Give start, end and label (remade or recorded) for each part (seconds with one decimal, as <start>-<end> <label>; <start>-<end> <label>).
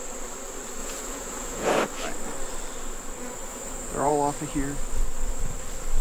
0.0-0.8 recorded; 0.8-1.7 remade; 1.7-3.5 recorded; 3.5-4.1 remade; 4.1-6.0 recorded